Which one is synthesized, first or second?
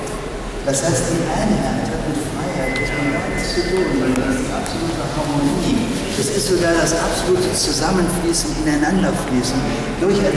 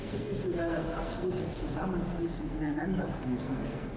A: second